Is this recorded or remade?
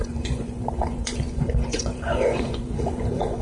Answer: remade